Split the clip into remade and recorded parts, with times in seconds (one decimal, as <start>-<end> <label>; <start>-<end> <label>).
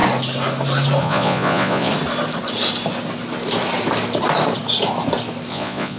0.0-1.0 recorded; 1.0-1.9 remade; 1.9-5.5 recorded; 5.5-6.0 remade